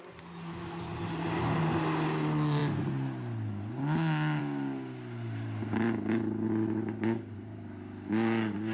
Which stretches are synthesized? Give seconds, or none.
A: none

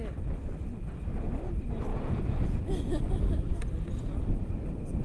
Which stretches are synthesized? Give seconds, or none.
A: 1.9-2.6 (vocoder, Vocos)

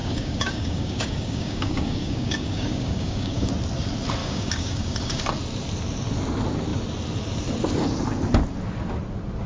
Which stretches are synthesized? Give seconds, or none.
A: 0.0-3.5 (codec, DAC); 4.2-5.2